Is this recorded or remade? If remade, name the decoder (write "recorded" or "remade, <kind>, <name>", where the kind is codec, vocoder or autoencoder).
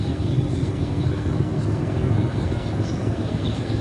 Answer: remade, codec, SNAC